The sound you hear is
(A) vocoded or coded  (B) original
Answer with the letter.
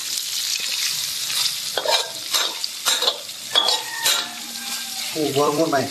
A